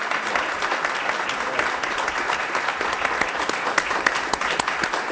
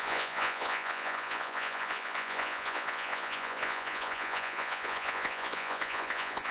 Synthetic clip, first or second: second